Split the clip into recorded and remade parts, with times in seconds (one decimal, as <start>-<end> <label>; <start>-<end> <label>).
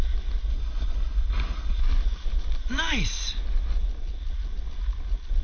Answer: 0.0-0.5 recorded; 0.5-1.8 remade; 1.8-5.4 recorded